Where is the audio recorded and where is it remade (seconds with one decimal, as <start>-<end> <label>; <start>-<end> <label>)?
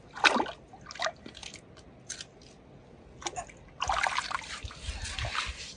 0.0-5.8 recorded